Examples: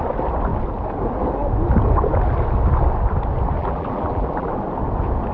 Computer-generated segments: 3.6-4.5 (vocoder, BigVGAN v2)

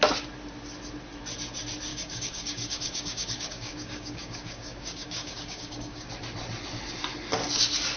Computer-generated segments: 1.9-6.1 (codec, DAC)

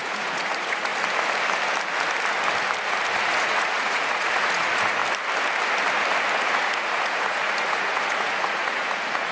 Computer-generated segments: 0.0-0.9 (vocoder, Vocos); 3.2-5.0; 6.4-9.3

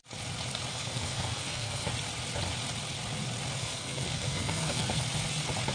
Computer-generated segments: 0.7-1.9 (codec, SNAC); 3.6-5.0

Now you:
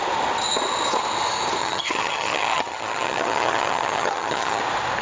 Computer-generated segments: 1.6-4.6 (vocoder, HiFi-GAN)